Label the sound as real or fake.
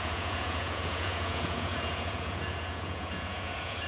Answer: fake